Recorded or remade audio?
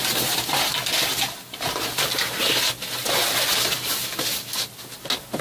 recorded